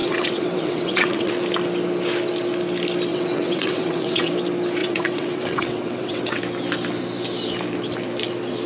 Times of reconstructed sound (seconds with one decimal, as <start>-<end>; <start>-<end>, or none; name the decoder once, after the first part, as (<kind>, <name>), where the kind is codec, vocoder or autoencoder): 0.0-1.3 (vocoder, WaveNeXt); 3.1-4.3; 4.8-6.4